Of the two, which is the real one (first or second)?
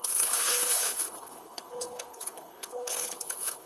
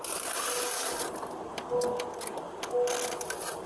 second